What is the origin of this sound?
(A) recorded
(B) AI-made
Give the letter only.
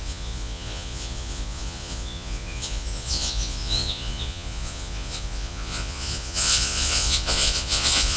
B